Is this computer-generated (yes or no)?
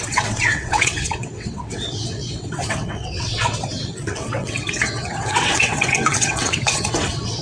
yes